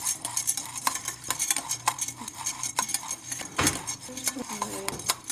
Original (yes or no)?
no